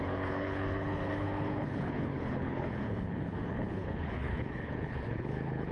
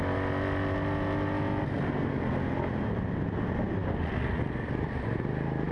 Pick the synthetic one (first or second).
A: first